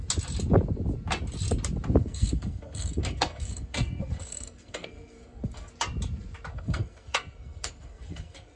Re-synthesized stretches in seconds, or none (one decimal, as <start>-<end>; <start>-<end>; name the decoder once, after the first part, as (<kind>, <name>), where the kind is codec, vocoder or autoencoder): 2.0-5.7 (codec, SNAC); 6.5-8.6